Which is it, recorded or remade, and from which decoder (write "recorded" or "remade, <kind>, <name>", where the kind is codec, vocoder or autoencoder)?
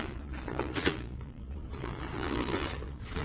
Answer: remade, vocoder, Vocos